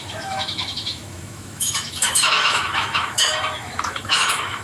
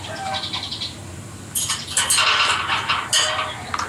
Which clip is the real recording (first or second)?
second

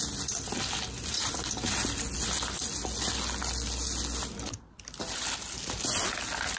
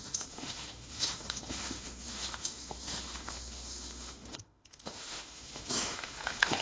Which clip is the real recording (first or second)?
first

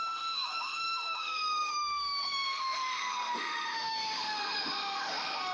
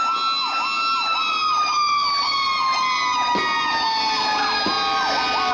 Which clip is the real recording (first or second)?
second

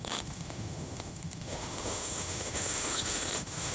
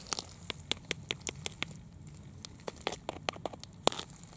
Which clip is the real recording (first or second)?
second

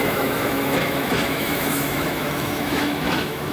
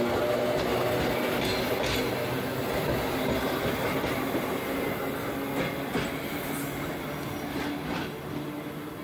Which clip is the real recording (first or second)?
second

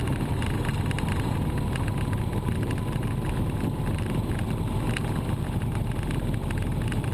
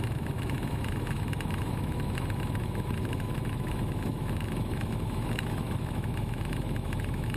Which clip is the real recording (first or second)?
first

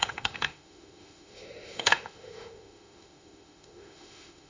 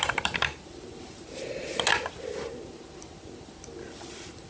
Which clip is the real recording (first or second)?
second